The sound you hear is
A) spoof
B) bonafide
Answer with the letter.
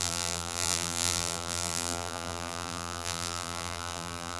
A